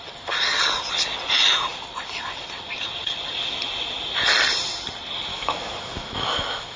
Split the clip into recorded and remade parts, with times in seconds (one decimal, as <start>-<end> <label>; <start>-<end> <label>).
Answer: 0.0-5.3 recorded; 5.3-6.8 remade